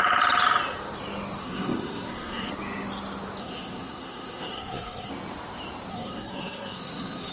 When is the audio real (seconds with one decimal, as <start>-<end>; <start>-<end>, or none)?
0.0-1.4; 2.5-3.4; 5.1-5.9